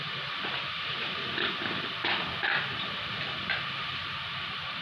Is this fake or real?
fake